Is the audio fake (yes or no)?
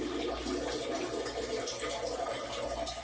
no